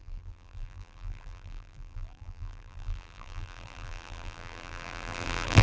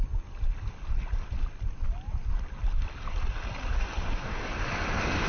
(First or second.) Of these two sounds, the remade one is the first